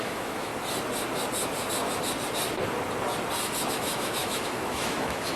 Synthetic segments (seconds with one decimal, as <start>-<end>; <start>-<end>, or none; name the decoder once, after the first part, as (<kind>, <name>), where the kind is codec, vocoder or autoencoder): 0.0-0.5 (autoencoder, DAC-VAE); 3.7-5.4